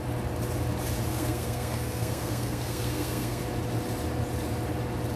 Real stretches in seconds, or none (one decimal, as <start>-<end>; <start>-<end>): 0.0-1.1; 3.4-5.2